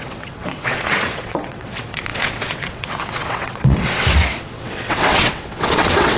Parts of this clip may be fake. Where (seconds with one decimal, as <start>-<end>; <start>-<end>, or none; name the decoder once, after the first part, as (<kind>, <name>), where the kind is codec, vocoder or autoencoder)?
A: 0.0-6.2 (vocoder, WaveNeXt)

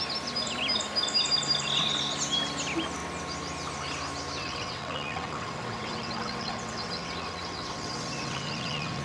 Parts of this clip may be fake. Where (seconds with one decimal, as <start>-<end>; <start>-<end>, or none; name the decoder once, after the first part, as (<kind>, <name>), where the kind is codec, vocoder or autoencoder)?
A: 4.4-9.0 (vocoder, WaveNeXt)

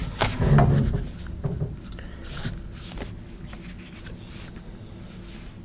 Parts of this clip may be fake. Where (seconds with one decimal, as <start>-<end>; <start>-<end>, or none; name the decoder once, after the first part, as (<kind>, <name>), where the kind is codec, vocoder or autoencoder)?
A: none

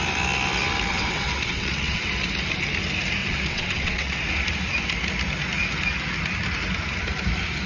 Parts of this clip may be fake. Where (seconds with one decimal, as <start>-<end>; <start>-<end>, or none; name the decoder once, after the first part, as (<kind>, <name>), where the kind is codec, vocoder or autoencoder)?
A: 0.9-2.0 (vocoder, WaveNeXt); 3.2-4.2

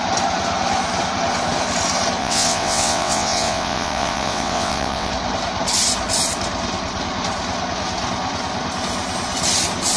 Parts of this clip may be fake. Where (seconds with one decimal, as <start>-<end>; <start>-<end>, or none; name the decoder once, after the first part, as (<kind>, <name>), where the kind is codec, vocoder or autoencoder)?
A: 2.2-5.1 (vocoder, WaveNeXt)